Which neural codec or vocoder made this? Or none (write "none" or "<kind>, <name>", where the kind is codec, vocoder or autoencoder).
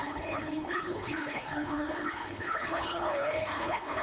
codec, HILCodec